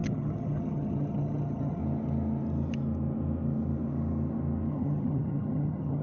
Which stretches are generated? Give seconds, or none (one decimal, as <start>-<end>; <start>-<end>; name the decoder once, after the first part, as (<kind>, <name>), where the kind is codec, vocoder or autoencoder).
0.0-1.8 (vocoder, HiFi-GAN); 4.7-6.0